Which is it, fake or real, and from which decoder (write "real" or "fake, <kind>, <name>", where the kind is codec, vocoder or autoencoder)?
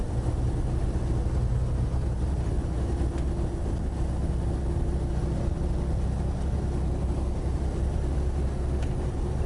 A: real